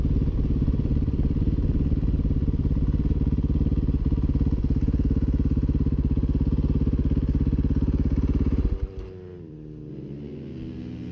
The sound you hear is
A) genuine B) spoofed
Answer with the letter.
A